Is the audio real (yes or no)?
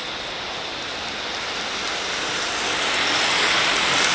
yes